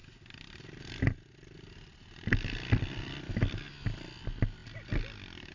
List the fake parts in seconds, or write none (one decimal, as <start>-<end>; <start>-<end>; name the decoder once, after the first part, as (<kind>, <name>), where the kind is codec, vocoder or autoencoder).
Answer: none